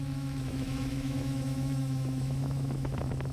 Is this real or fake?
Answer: fake